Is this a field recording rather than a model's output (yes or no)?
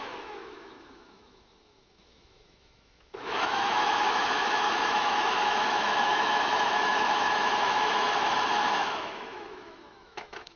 no